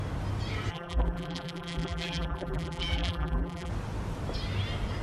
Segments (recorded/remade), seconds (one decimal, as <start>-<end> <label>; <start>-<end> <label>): 0.0-0.7 recorded; 0.7-3.7 remade; 3.7-5.0 recorded